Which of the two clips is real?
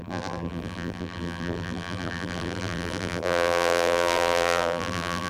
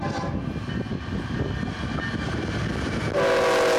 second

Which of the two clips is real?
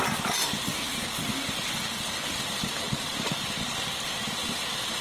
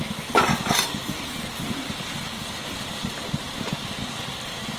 first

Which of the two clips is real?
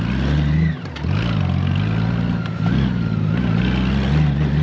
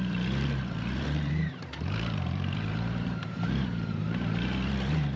first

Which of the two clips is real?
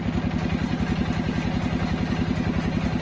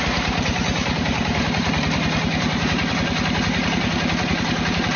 first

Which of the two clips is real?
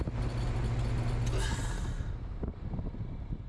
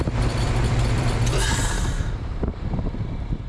first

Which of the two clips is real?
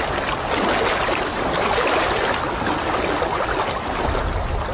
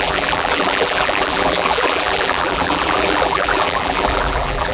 first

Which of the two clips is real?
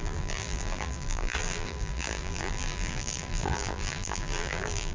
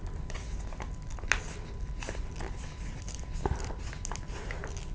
second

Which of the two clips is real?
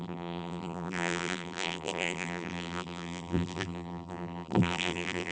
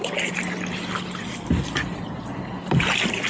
second